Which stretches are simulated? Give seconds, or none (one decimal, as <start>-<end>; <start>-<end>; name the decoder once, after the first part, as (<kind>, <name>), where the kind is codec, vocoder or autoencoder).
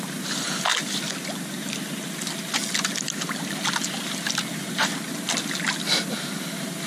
none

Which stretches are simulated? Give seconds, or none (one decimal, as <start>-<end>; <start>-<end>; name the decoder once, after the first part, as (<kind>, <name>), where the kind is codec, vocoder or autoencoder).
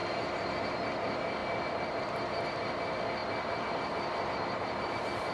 0.0-1.4 (vocoder, BigVGAN v2); 2.0-5.3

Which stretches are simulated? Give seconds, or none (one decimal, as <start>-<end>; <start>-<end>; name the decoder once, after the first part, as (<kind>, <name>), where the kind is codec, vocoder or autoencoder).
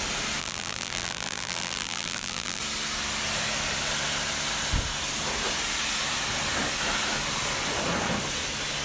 0.4-2.6 (vocoder, BigVGAN v2)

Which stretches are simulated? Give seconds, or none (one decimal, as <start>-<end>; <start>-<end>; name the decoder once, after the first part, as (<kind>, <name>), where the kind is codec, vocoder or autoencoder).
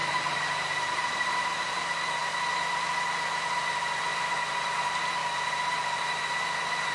0.0-1.8 (vocoder, BigVGAN v2); 4.1-4.8; 5.2-6.1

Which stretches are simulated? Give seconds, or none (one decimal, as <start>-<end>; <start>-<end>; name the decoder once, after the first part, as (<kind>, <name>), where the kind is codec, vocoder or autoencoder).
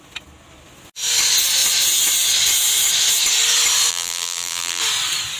3.9-4.8 (vocoder, BigVGAN v2)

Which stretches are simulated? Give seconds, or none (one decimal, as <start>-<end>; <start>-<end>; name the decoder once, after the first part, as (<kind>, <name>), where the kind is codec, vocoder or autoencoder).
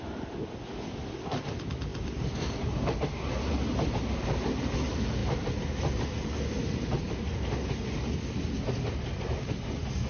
3.7-4.5 (vocoder, BigVGAN v2)